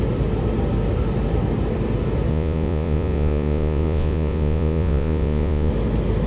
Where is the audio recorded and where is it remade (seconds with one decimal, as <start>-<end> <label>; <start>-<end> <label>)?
0.0-2.3 recorded; 2.3-5.7 remade; 5.7-6.3 recorded